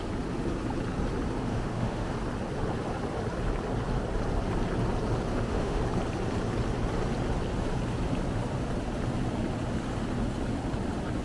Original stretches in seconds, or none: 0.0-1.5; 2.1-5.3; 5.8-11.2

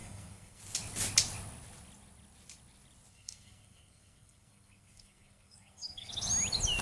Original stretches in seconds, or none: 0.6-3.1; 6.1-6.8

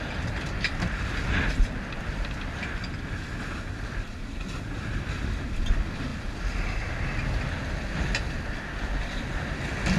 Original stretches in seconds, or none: 0.0-10.0